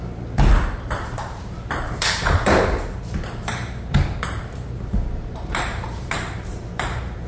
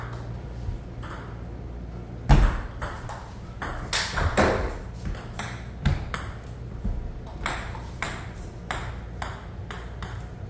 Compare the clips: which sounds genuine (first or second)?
second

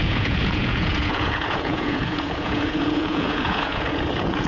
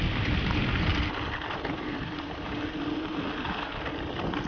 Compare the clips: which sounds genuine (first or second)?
second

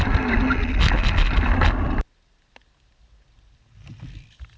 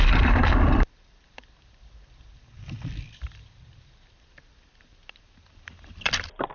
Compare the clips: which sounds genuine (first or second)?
first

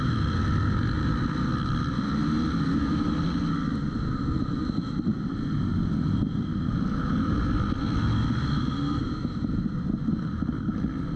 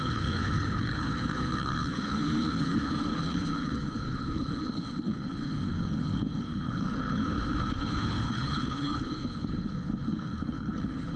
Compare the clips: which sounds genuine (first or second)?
first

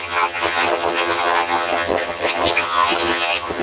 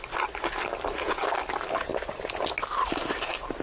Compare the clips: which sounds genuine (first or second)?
second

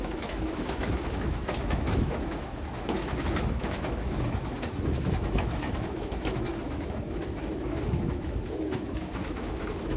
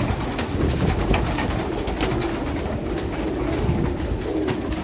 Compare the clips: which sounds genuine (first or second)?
second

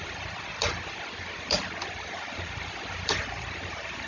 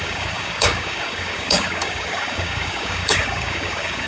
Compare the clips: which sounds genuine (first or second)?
first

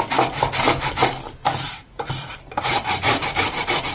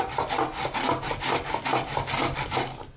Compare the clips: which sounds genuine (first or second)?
second